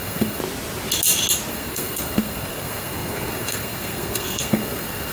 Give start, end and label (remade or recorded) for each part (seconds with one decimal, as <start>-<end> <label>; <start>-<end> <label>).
0.0-0.4 remade; 0.4-1.5 recorded; 1.5-5.1 remade